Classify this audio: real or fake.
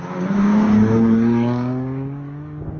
fake